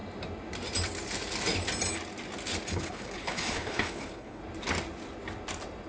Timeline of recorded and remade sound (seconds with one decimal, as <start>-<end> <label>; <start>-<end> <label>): 0.0-2.7 recorded; 2.7-4.4 remade; 4.4-5.9 recorded

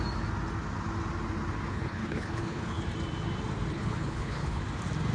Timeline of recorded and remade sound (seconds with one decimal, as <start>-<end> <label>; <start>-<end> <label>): 0.0-1.7 recorded; 1.7-2.8 remade; 2.8-3.7 recorded; 3.7-4.6 remade; 4.6-5.1 recorded

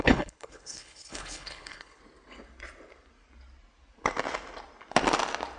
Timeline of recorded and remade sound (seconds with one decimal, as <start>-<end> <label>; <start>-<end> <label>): 0.0-2.0 remade; 2.0-5.6 recorded

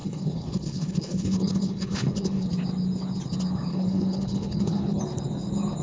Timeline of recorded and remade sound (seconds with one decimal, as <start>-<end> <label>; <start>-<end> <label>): 0.0-2.5 remade; 2.5-3.7 recorded; 3.7-5.0 remade; 5.0-5.8 recorded